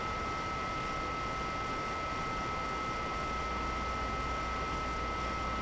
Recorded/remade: recorded